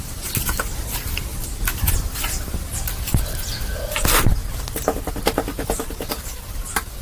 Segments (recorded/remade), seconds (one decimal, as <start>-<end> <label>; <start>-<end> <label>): 0.0-1.3 remade; 1.3-2.7 recorded; 2.7-4.4 remade; 4.4-5.1 recorded; 5.1-7.0 remade